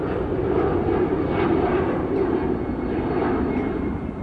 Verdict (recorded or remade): recorded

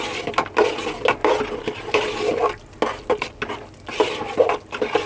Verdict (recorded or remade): recorded